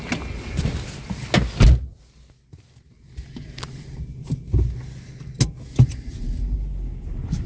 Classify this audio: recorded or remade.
recorded